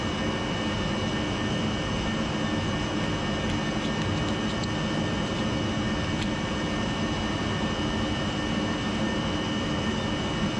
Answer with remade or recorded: recorded